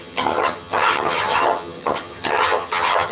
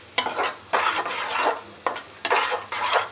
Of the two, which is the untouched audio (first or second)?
second